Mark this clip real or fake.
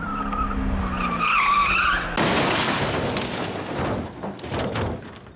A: real